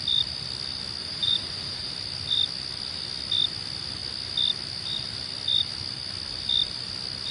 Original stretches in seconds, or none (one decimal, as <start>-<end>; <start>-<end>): 0.0-1.0; 1.9-7.3